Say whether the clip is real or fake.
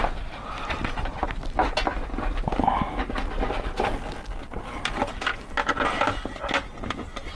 real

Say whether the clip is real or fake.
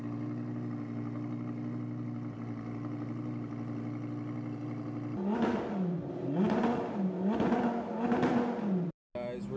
real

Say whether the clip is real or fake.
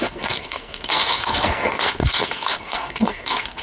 fake